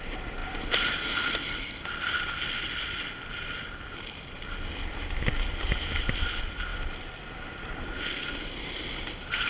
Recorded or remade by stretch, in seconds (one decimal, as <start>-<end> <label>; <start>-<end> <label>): 0.0-9.5 recorded